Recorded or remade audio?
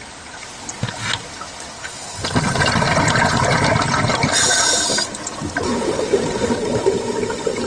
recorded